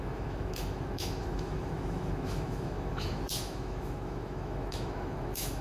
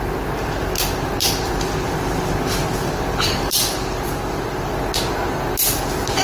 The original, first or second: second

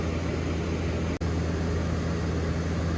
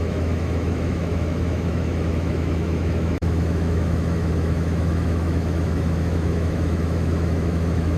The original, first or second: first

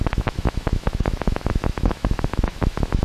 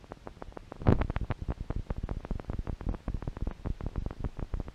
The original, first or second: second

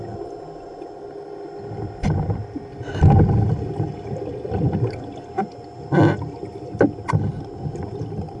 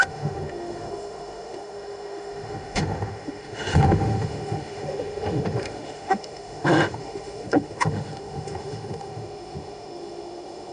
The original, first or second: first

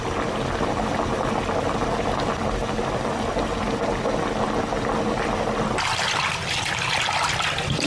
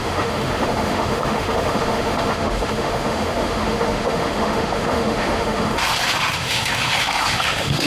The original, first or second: first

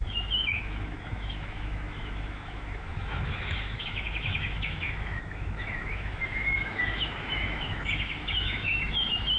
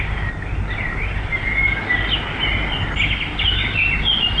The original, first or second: second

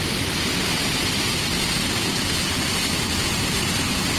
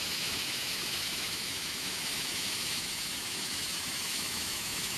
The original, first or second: first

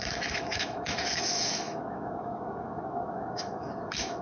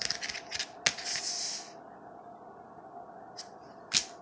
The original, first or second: second